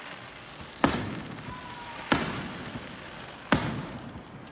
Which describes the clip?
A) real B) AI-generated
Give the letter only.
A